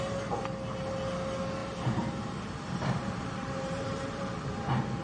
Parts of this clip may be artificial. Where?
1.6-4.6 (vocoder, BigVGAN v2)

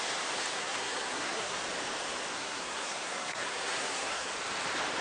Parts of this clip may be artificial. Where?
0.5-1.6 (codec, SNAC); 2.3-4.3

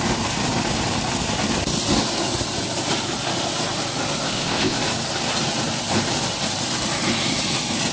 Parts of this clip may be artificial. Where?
4.2-4.8 (codec, ZipCodec)

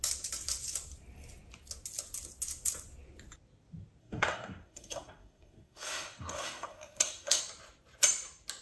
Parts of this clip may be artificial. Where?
4.0-7.4 (codec, SNAC)

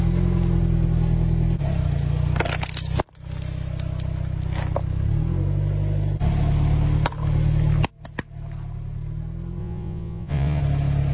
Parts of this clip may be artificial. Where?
9.6-10.6 (vocoder, Vocos)

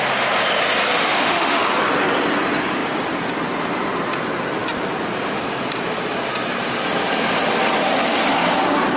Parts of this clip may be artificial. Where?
0.9-1.7 (autoencoder, DAC-VAE)

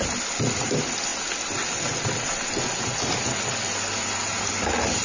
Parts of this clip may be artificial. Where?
none